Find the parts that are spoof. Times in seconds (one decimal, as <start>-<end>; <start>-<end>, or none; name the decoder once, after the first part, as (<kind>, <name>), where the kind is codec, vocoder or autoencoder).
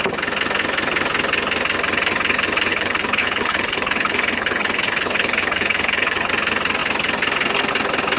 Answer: 2.7-6.3 (codec, HILCodec)